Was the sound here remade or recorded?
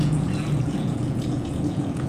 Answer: remade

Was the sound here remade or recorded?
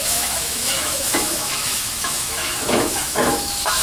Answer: remade